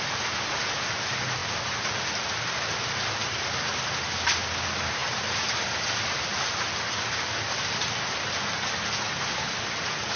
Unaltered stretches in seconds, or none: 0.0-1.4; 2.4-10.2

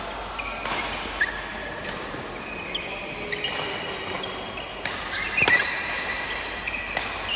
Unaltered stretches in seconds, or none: 0.0-1.5; 2.1-7.4

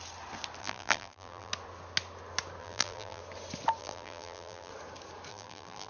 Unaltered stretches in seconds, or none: 0.0-0.6; 1.5-2.6; 3.2-3.8; 4.7-5.3

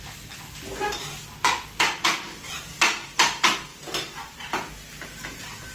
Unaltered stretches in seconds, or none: 0.0-3.7; 4.9-5.7